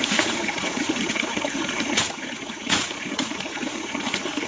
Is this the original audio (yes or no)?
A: no